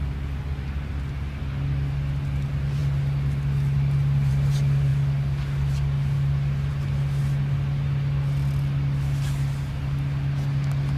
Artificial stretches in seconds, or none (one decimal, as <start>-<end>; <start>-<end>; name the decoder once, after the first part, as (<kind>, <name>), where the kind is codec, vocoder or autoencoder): none